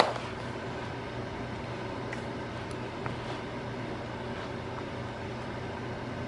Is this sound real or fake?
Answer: real